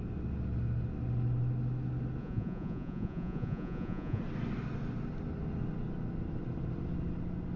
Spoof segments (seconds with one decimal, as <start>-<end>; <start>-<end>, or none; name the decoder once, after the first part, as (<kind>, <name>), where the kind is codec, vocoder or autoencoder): 2.2-4.2 (vocoder, Vocos)

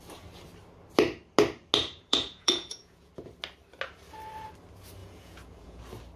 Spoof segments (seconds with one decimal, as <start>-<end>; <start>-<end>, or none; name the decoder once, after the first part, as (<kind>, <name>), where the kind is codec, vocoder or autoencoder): 1.8-3.1 (vocoder, Vocos); 5.0-5.8

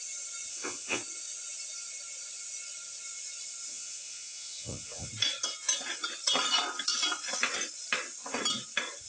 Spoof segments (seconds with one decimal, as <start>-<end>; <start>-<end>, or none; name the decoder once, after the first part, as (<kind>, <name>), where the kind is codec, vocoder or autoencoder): 0.5-1.0 (vocoder, Vocos); 3.7-5.1

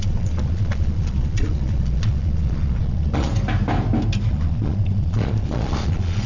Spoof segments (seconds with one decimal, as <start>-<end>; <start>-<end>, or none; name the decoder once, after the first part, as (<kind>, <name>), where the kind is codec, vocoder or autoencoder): 0.0-3.3 (vocoder, Vocos); 4.3-6.3

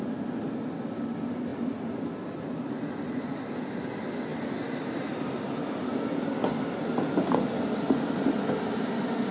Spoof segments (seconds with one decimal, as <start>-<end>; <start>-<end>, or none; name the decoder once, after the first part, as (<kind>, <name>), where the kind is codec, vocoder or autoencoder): none

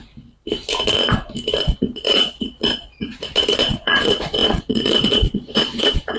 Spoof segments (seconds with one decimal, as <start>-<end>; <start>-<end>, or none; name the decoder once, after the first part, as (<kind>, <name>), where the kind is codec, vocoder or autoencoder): 1.6-6.2 (vocoder, Vocos)